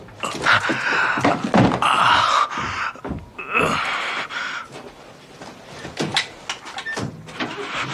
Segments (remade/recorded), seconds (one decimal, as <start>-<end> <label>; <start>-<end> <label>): 0.0-7.9 recorded